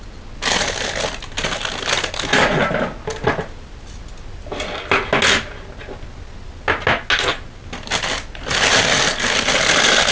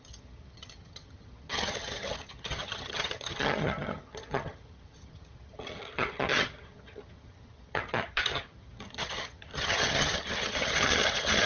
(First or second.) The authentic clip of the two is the first